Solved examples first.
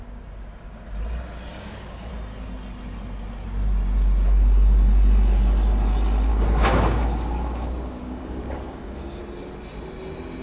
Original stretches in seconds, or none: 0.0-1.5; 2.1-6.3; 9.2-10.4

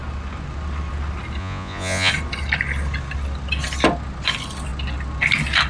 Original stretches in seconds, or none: 0.0-1.4; 2.1-5.7

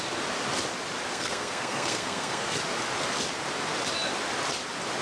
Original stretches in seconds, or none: 0.0-1.1; 2.6-5.0

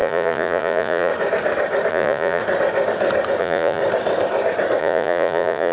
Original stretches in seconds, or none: 1.1-1.9; 2.4-3.4; 3.8-4.8